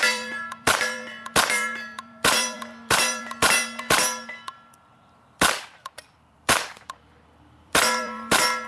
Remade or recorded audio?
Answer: remade